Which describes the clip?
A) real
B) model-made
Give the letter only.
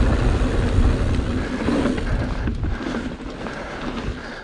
A